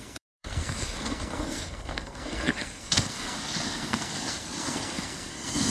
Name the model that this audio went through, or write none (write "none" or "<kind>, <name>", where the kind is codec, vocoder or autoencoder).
codec, SNAC